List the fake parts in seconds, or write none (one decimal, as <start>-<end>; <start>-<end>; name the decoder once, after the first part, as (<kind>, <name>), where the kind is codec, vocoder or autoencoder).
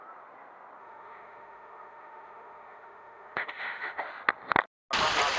0.8-4.0 (autoencoder, DAC-VAE)